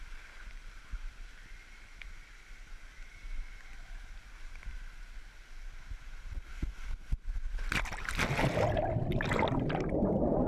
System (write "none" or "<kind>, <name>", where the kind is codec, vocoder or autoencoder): none